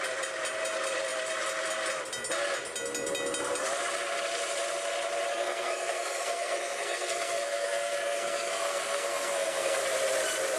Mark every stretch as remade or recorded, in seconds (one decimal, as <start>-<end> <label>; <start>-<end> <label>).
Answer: 0.0-5.3 recorded; 5.3-9.8 remade; 9.8-10.6 recorded